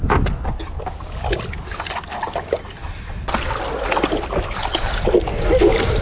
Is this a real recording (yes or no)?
yes